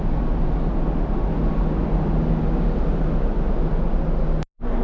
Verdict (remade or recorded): recorded